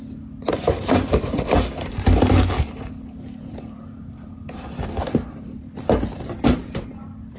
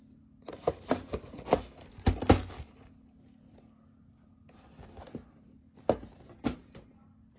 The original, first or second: second